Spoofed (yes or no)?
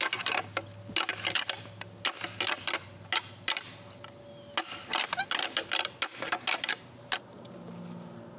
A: no